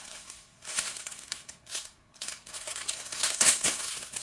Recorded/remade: remade